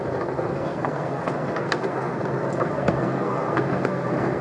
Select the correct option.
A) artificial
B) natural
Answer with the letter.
A